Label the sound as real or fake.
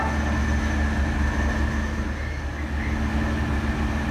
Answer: real